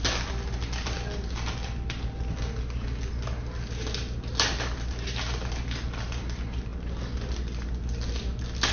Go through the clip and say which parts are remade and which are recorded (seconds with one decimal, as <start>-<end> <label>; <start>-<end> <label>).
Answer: 0.0-8.7 recorded